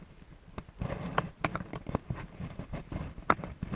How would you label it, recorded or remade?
recorded